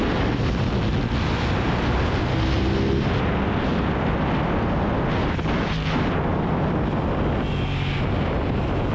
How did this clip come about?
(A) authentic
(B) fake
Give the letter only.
A